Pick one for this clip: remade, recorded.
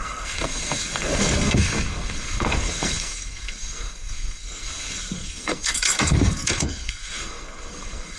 remade